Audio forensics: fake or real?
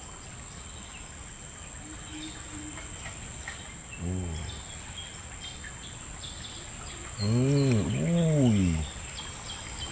real